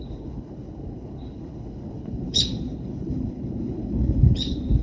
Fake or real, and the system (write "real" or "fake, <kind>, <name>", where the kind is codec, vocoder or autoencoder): fake, codec, HILCodec